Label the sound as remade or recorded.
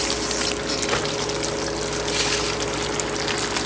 recorded